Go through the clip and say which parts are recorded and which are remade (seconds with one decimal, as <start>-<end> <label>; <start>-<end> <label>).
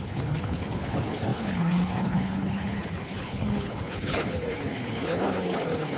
0.0-6.0 remade